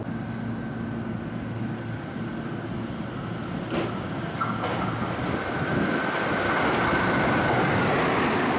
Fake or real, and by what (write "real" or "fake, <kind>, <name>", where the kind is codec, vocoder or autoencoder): real